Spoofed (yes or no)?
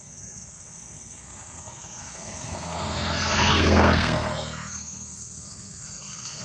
yes